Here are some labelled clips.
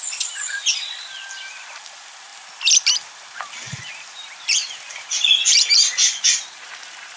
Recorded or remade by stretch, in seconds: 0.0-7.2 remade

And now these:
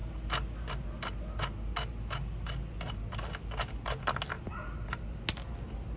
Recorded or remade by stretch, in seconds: 0.0-6.0 recorded

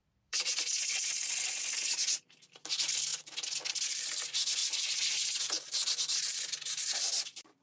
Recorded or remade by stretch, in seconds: 0.0-3.1 remade; 3.1-3.7 recorded; 3.7-4.6 remade; 4.6-5.4 recorded; 5.4-7.6 remade

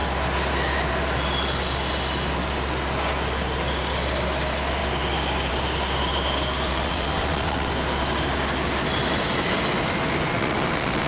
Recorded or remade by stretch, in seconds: 0.0-6.7 recorded; 6.7-7.7 remade; 7.7-10.3 recorded; 10.3-11.1 remade

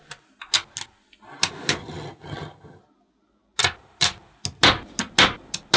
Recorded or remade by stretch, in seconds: 0.0-1.8 recorded; 1.8-2.8 remade; 2.8-5.8 recorded

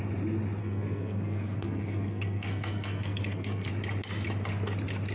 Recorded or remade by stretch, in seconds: 0.0-0.6 recorded; 0.6-3.7 remade; 3.7-5.1 recorded

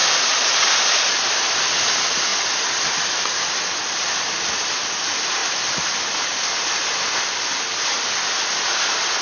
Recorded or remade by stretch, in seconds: 0.0-1.6 remade; 1.6-9.2 recorded

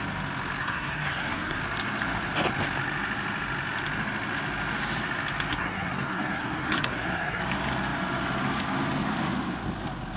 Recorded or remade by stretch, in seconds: 0.0-0.6 recorded; 0.6-1.6 remade; 1.6-5.5 recorded; 5.5-7.4 remade; 7.4-10.2 recorded